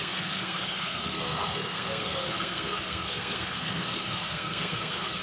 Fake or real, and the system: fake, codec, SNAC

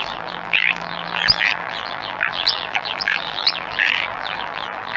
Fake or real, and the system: fake, vocoder, BigVGAN v2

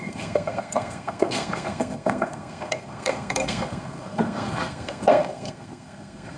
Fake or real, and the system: fake, codec, SNAC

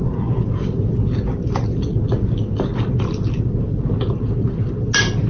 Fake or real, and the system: real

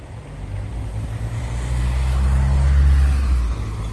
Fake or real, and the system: real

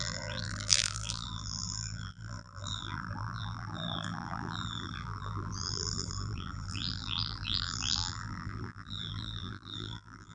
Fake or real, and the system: fake, vocoder, BigVGAN v2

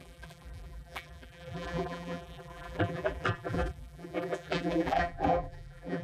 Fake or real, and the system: fake, vocoder, BigVGAN v2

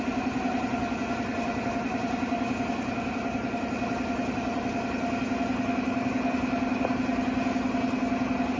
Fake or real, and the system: real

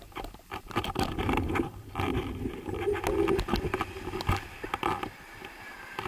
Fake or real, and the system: real